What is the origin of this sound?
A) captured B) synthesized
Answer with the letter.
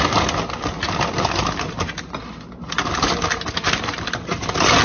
A